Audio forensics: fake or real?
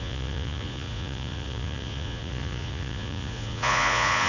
fake